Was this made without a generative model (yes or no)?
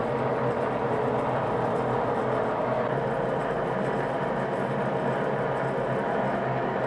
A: yes